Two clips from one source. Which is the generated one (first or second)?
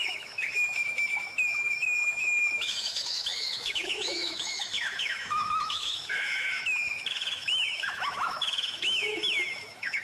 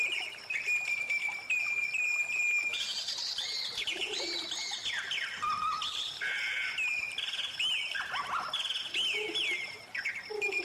first